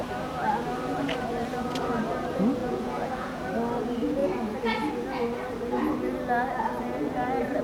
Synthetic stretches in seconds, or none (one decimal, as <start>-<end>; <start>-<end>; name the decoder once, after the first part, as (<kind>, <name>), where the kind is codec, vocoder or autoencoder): 2.6-3.4 (vocoder, Vocos)